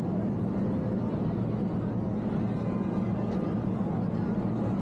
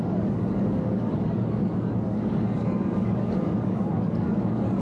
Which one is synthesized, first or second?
second